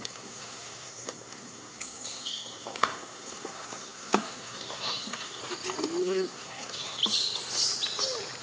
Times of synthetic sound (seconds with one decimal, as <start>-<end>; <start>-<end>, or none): 0.0-5.4; 6.0-7.0

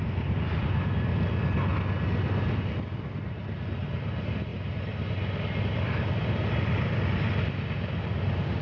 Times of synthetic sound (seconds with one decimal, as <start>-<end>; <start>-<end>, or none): 0.0-1.7; 3.8-4.5; 5.6-8.6

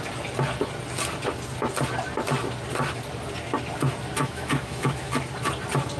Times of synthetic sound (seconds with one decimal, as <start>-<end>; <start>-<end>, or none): 4.2-5.1

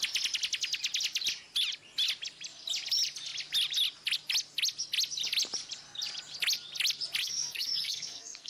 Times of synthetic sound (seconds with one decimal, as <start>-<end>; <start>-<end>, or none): 7.2-8.5

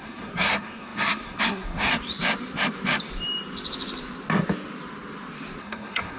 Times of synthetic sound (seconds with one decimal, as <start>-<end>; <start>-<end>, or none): 0.0-1.9; 5.6-6.2